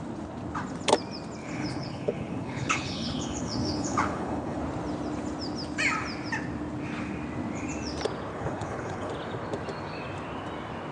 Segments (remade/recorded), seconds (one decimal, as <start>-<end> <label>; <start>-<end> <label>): 0.0-1.4 recorded; 1.4-4.6 remade; 4.6-8.3 recorded; 8.3-9.1 remade; 9.1-10.9 recorded